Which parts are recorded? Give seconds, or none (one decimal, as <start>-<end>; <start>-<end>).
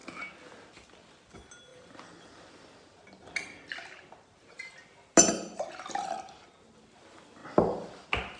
0.0-8.4